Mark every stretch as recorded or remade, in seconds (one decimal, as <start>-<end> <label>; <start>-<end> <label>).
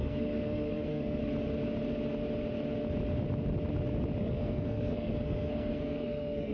0.0-1.2 remade; 1.2-4.2 recorded; 4.2-6.5 remade